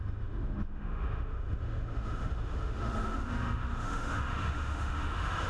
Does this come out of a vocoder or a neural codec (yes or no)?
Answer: yes